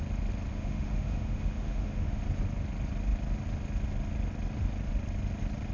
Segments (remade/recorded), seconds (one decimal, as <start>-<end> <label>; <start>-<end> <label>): 0.0-0.5 recorded; 0.5-2.2 remade; 2.2-5.7 recorded